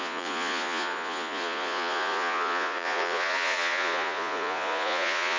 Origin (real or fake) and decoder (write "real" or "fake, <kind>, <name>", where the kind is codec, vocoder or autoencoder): fake, vocoder, Vocos